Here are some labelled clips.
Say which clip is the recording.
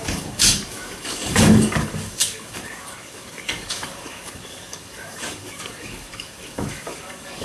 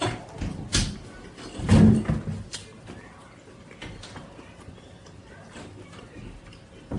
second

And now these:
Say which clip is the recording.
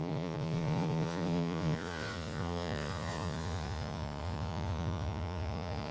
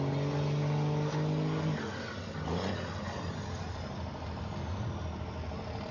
second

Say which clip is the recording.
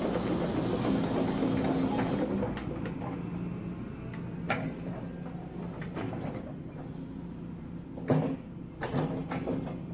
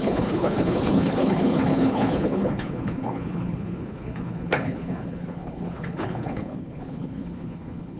first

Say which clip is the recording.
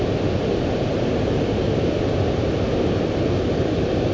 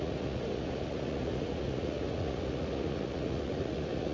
first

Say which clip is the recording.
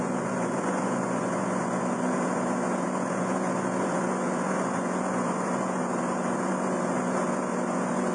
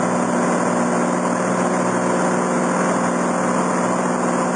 second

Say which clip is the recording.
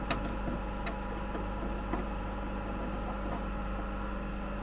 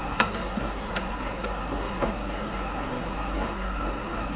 first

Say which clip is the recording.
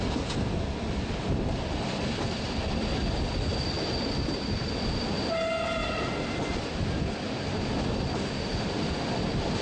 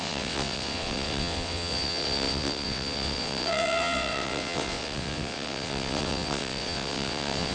first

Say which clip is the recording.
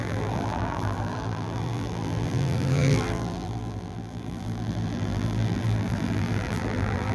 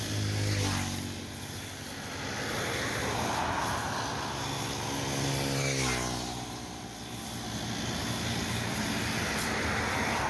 second